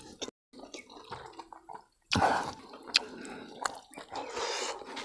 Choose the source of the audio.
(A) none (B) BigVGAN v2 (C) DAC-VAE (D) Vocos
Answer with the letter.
A